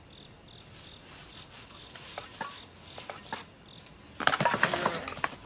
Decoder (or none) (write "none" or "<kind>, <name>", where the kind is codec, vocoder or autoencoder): none